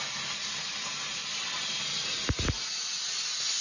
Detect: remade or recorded recorded